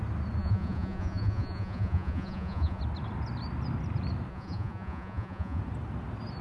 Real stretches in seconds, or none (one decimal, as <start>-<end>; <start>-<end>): 0.0-0.4; 2.8-4.3; 5.6-6.4

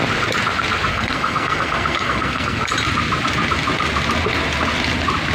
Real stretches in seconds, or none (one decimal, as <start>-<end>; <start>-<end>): 0.0-0.9; 2.7-5.3

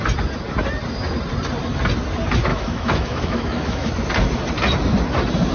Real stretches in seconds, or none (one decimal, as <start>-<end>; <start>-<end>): 0.0-2.5; 3.9-5.5

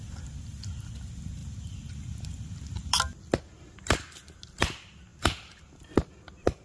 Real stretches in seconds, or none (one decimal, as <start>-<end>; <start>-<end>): 0.0-6.6

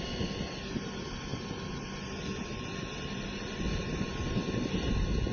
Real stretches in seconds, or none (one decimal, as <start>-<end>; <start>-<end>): 0.0-5.3

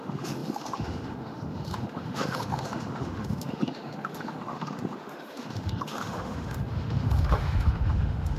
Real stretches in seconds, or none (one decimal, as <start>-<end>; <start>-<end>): none